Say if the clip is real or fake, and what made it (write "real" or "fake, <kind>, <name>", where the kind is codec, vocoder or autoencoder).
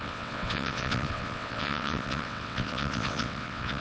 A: fake, vocoder, WaveNeXt